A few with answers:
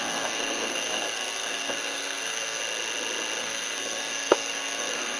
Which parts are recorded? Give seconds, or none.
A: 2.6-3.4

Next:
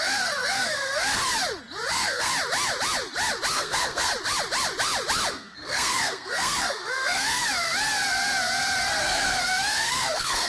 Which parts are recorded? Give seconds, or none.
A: 1.2-1.9; 2.3-3.5; 4.1-5.3; 7.4-9.0

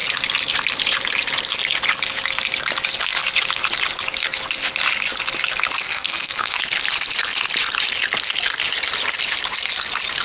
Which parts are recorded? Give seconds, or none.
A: 0.0-5.8; 6.6-10.2